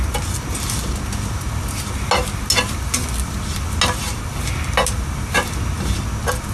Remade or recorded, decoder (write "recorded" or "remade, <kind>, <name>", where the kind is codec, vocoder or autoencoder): recorded